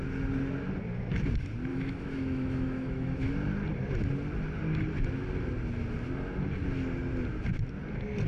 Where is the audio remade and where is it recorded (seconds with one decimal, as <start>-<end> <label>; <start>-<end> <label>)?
0.0-1.7 recorded; 1.7-3.3 remade; 3.3-8.3 recorded